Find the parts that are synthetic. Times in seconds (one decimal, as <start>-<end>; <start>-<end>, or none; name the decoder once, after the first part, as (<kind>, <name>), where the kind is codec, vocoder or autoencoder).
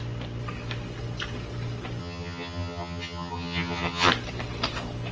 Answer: 2.0-4.1 (vocoder, HiFi-GAN)